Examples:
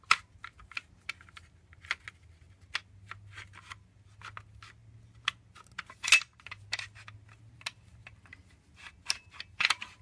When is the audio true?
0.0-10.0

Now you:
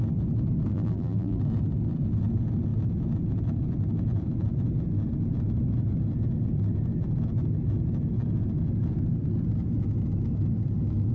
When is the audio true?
0.0-0.7; 1.4-11.1